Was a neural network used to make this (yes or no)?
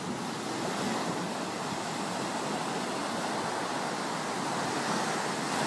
no